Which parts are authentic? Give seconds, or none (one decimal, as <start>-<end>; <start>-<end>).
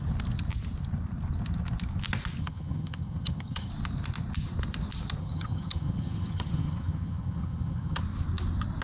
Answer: 0.0-2.4; 3.7-5.2; 8.0-8.8